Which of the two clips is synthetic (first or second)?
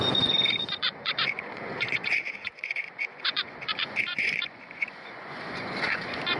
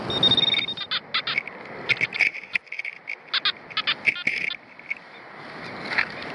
first